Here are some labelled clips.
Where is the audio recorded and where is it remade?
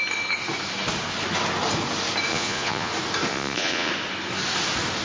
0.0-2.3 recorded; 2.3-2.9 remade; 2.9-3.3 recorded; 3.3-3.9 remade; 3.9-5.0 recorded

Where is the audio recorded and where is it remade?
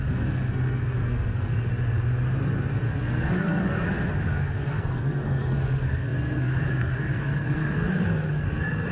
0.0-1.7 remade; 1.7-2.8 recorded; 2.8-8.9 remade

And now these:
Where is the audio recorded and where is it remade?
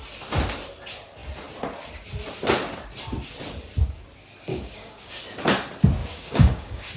0.0-4.5 recorded; 4.5-5.2 remade; 5.2-6.0 recorded; 6.0-7.0 remade